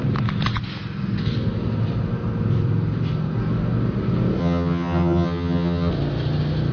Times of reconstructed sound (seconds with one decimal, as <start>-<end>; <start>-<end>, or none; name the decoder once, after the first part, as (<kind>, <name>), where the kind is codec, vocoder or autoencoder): 4.4-5.9 (vocoder, HiFi-GAN)